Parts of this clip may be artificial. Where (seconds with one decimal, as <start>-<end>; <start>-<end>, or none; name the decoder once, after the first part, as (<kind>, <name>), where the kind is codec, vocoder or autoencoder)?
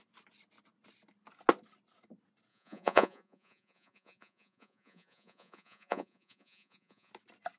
2.5-7.1 (vocoder, Vocos)